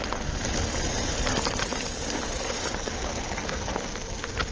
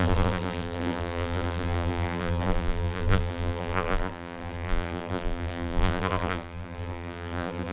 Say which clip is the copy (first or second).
second